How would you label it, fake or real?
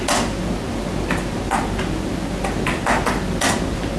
real